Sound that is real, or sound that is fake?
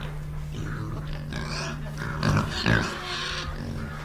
real